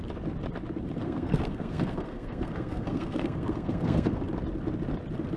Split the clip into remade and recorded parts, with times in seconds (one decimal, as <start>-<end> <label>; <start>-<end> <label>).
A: 0.0-1.0 recorded; 1.0-4.2 remade; 4.2-5.4 recorded